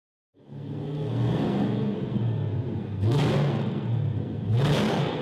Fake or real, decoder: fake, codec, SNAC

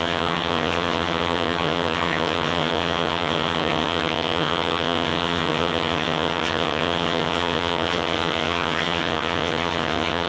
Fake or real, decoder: fake, vocoder, HiFi-GAN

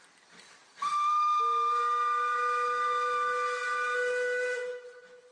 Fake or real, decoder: real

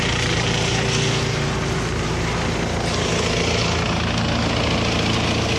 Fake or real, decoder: real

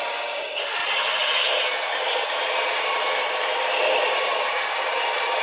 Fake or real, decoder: fake, vocoder, BigVGAN v2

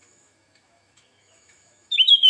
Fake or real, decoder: fake, autoencoder, DAC-VAE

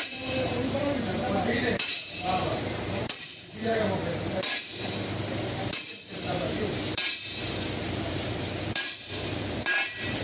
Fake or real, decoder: fake, vocoder, BigVGAN v2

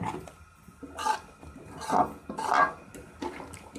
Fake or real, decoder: real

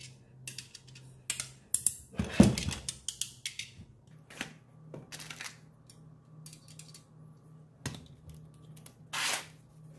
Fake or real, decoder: real